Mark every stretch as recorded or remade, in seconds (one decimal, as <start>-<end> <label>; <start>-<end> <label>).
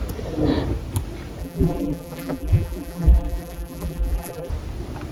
0.0-1.4 recorded; 1.4-4.5 remade; 4.5-5.1 recorded